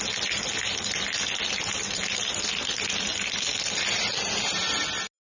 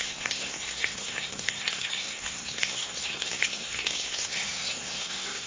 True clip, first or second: first